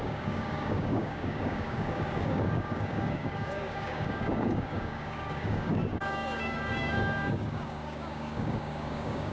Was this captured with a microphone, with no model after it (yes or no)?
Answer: no